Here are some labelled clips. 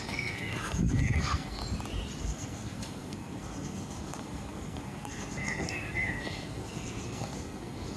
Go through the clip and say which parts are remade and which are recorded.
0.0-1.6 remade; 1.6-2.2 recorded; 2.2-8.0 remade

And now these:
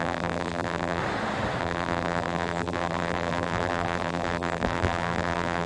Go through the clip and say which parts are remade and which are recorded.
0.0-1.0 remade; 1.0-1.6 recorded; 1.6-5.7 remade

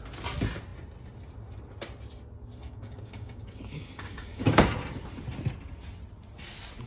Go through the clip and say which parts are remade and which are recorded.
0.0-2.6 recorded; 2.6-4.6 remade; 4.6-6.9 recorded

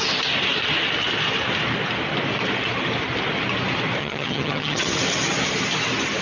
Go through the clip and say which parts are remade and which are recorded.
0.0-4.0 recorded; 4.0-4.9 remade; 4.9-6.2 recorded

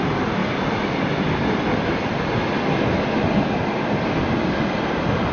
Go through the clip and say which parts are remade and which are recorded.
0.0-5.3 recorded

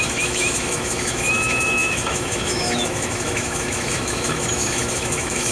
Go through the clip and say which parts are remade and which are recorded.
0.0-5.5 remade

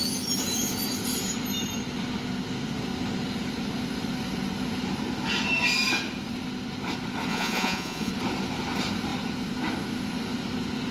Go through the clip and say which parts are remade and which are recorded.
0.0-7.3 recorded; 7.3-8.1 remade; 8.1-10.9 recorded